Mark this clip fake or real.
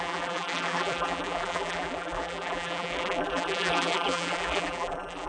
fake